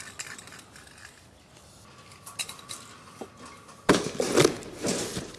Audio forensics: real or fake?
real